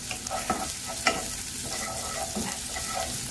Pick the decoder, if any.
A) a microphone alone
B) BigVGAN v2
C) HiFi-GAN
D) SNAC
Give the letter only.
A